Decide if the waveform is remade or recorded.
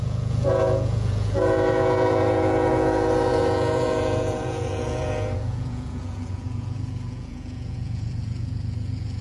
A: remade